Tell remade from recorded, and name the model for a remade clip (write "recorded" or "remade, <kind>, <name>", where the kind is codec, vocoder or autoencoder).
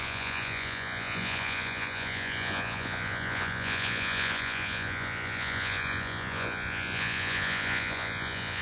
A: remade, vocoder, Vocos